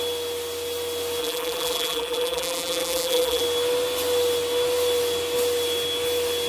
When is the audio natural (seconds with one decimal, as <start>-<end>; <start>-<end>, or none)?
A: 0.0-1.2; 3.4-6.5